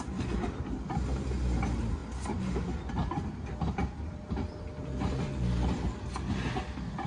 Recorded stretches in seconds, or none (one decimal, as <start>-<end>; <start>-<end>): 0.0-7.1